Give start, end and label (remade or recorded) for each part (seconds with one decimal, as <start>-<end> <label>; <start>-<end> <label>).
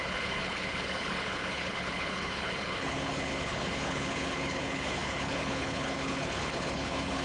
0.0-7.2 remade